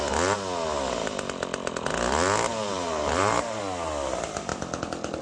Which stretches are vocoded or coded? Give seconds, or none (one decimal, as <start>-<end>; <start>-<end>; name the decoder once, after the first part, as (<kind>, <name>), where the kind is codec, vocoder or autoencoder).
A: 2.5-3.6 (vocoder, BigVGAN v2)